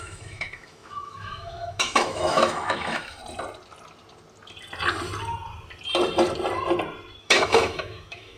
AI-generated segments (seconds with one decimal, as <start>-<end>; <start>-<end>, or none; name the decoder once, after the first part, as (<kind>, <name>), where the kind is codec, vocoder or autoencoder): 0.0-3.2 (autoencoder, DAC-VAE); 7.2-8.4